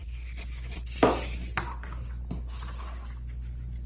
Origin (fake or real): real